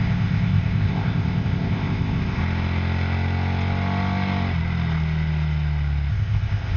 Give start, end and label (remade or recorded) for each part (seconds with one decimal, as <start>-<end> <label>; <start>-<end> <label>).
0.0-2.4 remade; 2.4-6.1 recorded; 6.1-6.8 remade